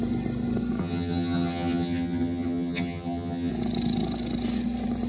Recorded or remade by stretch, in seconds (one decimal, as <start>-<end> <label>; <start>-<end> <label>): 0.0-0.8 recorded; 0.8-3.5 remade; 3.5-5.1 recorded